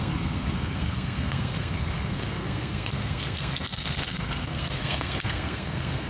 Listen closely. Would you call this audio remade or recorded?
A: remade